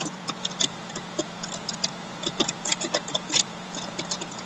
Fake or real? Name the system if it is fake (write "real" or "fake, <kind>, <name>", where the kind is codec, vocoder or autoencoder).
fake, vocoder, Vocos